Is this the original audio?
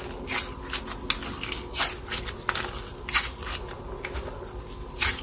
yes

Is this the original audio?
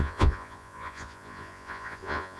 no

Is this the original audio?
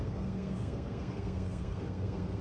no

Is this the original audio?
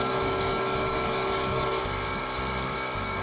no